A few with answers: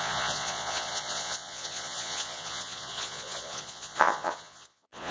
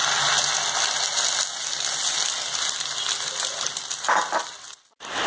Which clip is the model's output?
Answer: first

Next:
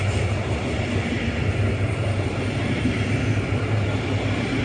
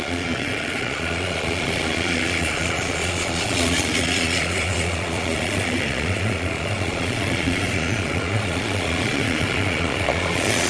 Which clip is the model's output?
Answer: second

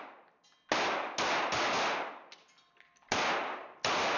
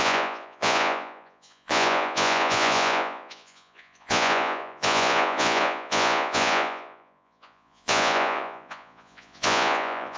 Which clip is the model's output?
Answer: second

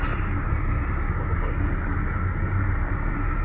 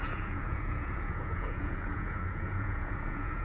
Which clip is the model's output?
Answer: second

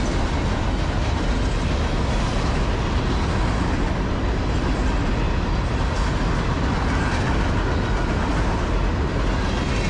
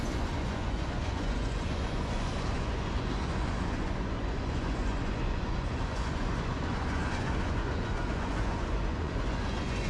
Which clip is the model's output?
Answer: second